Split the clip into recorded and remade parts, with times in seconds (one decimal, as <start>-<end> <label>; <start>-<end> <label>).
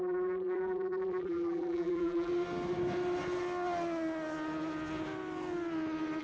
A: 0.0-2.3 remade; 2.3-6.2 recorded